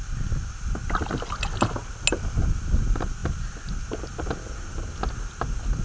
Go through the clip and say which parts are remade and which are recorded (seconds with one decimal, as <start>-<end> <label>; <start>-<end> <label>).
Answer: 0.0-5.8 recorded